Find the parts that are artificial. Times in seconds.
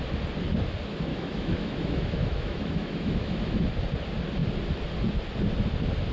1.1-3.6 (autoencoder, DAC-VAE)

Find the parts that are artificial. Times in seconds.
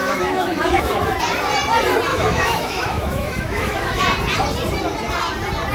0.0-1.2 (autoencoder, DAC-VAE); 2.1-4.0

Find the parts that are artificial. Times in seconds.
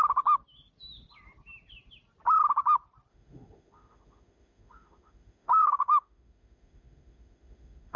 3.1-8.0 (autoencoder, DAC-VAE)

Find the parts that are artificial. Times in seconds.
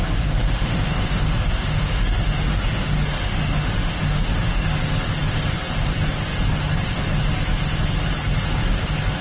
0.4-4.7 (autoencoder, DAC-VAE)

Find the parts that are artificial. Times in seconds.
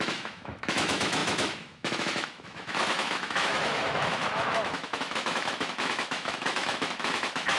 0.0-7.6 (autoencoder, DAC-VAE)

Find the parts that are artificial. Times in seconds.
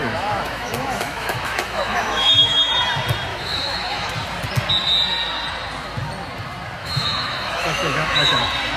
0.0-2.7 (autoencoder, DAC-VAE); 3.3-4.1; 6.8-8.4